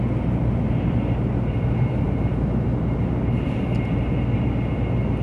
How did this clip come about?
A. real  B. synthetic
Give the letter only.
A